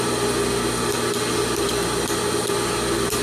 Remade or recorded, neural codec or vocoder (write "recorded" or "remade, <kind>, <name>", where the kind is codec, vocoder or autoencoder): recorded